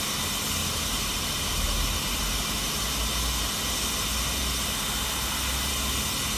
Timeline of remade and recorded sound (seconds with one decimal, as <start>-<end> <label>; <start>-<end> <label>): 0.0-0.6 recorded; 0.6-2.9 remade; 2.9-6.4 recorded